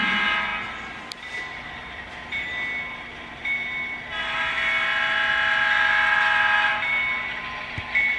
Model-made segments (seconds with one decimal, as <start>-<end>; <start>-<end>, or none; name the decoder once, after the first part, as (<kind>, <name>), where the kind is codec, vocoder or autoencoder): none